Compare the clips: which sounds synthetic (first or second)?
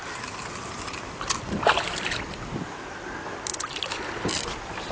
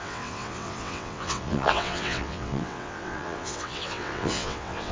second